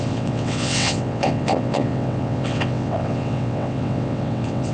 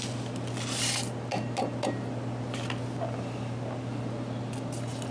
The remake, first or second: first